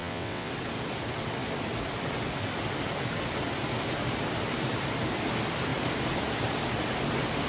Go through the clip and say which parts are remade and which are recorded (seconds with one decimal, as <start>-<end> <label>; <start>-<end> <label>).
0.0-0.5 remade; 0.5-7.5 recorded